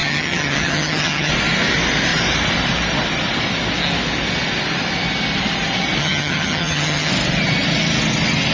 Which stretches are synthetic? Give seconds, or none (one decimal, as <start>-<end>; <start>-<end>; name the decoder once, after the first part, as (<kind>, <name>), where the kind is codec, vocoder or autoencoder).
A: 0.0-1.3 (vocoder, HiFi-GAN); 6.0-7.1